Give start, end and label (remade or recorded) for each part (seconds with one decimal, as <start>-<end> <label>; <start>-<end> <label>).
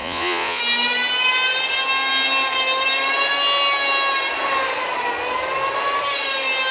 0.0-0.6 remade; 0.6-6.7 recorded